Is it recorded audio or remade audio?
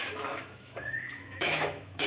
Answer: remade